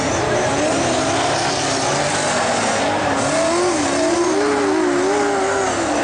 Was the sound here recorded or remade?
recorded